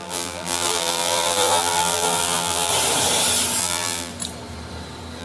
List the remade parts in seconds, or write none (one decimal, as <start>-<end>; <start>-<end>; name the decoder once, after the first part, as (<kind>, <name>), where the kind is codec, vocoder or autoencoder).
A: 0.0-2.7 (vocoder, BigVGAN v2); 3.6-4.1